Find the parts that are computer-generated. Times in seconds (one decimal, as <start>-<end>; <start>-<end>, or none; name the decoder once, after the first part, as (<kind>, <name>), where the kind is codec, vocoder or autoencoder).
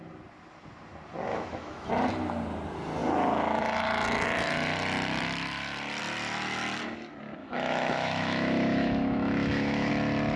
1.3-1.9 (autoencoder, DAC-VAE); 7.4-9.9